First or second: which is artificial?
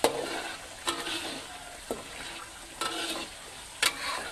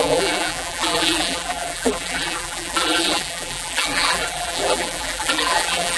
second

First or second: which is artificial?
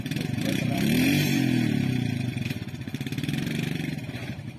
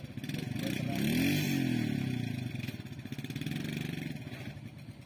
first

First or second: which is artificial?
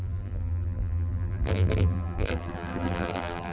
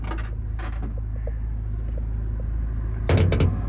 first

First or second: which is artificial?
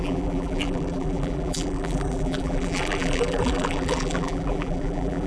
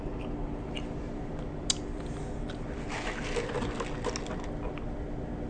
first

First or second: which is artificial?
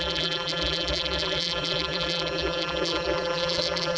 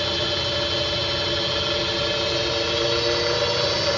first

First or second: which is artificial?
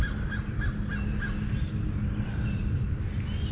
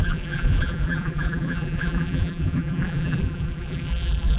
second